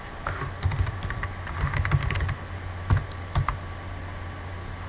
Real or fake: real